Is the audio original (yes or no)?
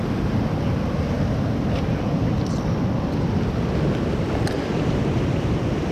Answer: yes